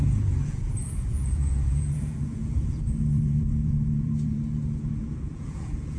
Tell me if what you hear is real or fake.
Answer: fake